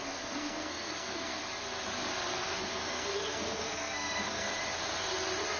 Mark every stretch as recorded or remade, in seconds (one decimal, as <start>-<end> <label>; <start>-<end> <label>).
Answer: 0.0-1.4 remade; 1.4-2.3 recorded; 2.3-4.5 remade; 4.5-5.6 recorded